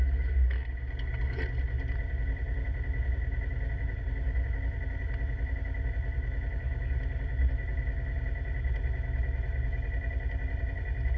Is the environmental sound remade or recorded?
recorded